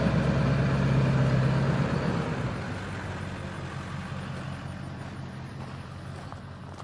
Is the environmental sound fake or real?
real